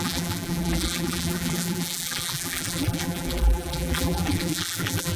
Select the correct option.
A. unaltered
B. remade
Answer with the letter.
B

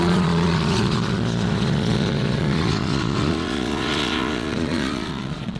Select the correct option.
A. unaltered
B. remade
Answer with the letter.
B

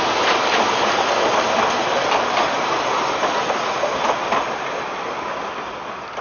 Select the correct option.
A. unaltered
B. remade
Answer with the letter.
A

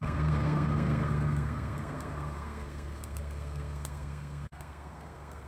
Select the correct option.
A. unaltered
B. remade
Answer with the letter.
B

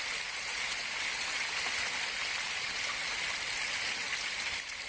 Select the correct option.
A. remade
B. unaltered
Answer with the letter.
B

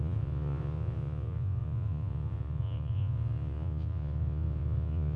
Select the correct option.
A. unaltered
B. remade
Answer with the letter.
B